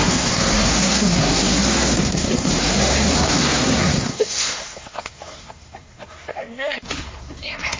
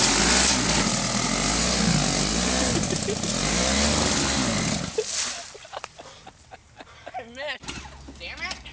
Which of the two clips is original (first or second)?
second